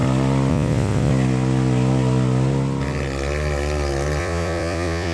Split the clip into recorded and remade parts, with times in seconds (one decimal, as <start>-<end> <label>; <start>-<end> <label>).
0.0-0.5 recorded; 0.5-1.1 remade; 1.1-4.2 recorded; 4.2-5.1 remade